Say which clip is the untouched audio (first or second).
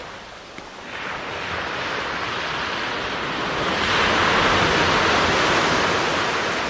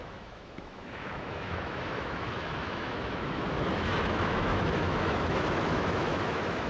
first